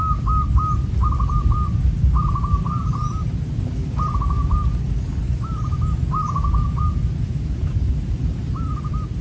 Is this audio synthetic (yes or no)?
no